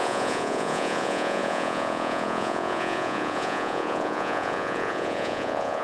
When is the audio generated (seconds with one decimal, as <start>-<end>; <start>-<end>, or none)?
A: 0.0-5.8